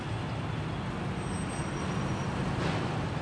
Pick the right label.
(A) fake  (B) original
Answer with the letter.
B